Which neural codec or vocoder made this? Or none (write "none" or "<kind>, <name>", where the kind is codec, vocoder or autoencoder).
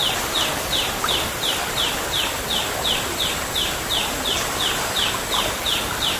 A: none